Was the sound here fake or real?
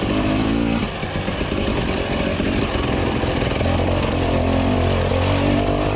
real